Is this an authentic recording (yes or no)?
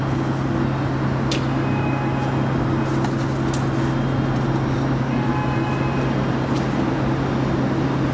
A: yes